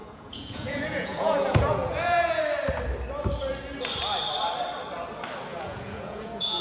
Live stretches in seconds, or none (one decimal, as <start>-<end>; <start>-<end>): 2.4-5.5